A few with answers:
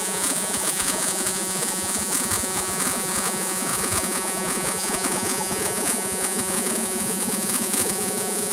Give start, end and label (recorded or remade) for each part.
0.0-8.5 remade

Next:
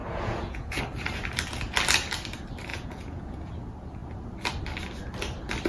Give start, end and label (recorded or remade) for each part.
0.0-0.8 remade; 0.8-2.7 recorded; 2.7-3.5 remade; 3.5-5.7 recorded

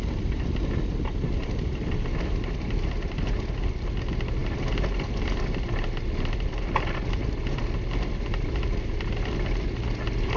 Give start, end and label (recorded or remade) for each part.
0.0-10.4 recorded

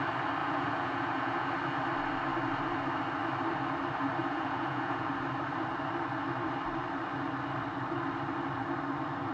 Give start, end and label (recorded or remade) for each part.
0.0-0.4 recorded; 0.4-1.5 remade; 1.5-4.2 recorded; 4.2-5.1 remade; 5.1-9.3 recorded

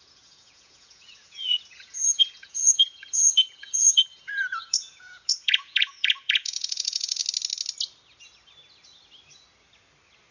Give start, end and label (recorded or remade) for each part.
0.0-7.2 remade; 7.2-10.3 recorded

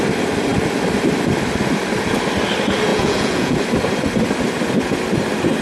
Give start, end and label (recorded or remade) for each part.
0.0-2.9 recorded; 2.9-3.6 remade; 3.6-5.6 recorded

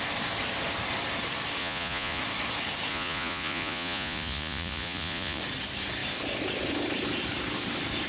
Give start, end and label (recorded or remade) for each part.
0.0-1.6 recorded; 1.6-2.2 remade; 2.2-2.9 recorded; 2.9-5.4 remade; 5.4-8.1 recorded

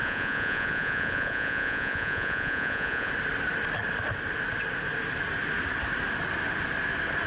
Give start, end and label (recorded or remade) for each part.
0.0-3.1 remade; 3.1-7.3 recorded